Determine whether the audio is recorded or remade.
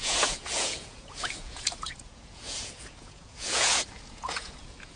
remade